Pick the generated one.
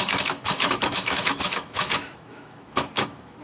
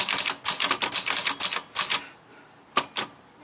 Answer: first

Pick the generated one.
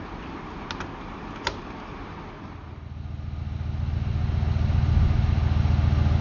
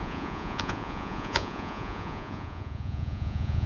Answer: second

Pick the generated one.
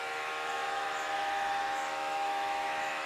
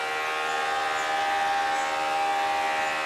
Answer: first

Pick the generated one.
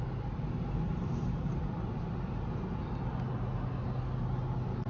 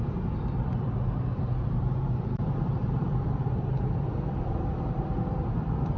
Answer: second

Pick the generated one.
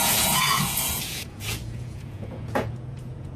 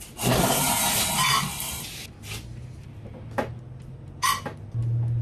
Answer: first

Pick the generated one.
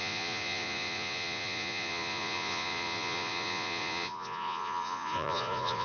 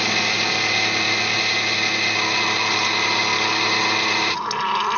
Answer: first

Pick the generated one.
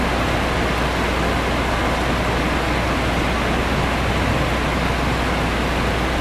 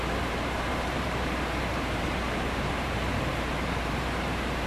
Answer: second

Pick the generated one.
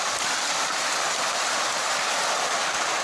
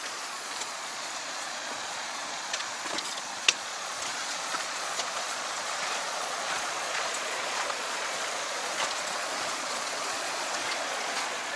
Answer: second